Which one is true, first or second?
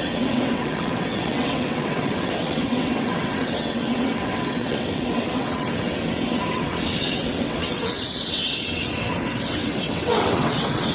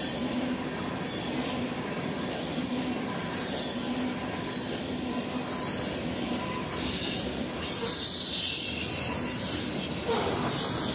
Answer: second